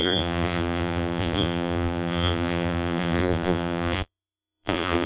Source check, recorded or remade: remade